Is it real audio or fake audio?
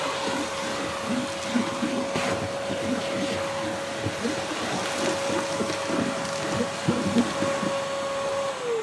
real